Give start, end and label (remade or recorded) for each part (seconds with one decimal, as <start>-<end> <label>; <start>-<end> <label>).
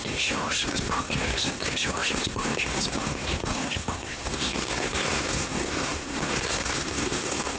0.0-7.6 remade